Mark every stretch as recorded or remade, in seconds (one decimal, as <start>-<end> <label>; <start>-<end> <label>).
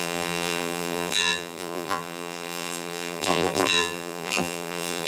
0.0-5.1 remade